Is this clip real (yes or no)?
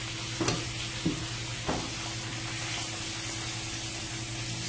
yes